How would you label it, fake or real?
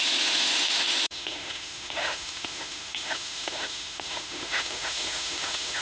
fake